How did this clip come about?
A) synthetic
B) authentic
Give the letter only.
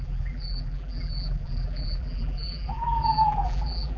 A